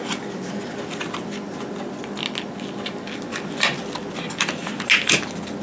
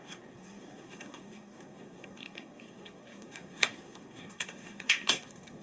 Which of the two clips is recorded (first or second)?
first